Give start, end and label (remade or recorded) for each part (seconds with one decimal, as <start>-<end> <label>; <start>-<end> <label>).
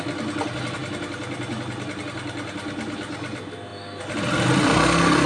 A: 0.0-5.3 recorded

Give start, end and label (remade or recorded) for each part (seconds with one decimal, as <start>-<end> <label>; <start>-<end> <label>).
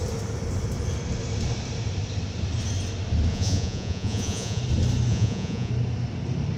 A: 0.0-3.3 recorded; 3.3-4.6 remade; 4.6-5.1 recorded; 5.1-5.7 remade; 5.7-6.6 recorded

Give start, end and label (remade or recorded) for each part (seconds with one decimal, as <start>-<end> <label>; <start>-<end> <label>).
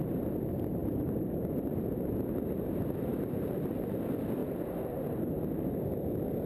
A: 0.0-0.8 recorded; 0.8-4.0 remade; 4.0-4.4 recorded; 4.4-5.3 remade; 5.3-6.5 recorded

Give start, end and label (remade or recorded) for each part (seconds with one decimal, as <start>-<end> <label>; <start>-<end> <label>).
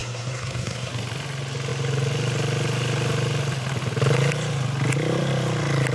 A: 0.0-0.9 remade; 0.9-5.9 recorded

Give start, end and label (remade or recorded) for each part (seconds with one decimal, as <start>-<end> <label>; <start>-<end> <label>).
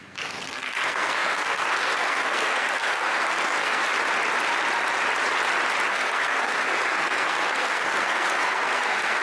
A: 0.0-3.8 remade; 3.8-5.9 recorded; 5.9-9.2 remade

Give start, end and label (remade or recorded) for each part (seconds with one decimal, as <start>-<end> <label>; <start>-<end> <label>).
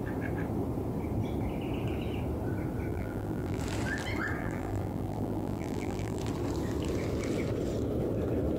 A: 0.0-2.9 recorded; 2.9-3.6 remade; 3.6-4.4 recorded; 4.4-6.2 remade; 6.2-8.6 recorded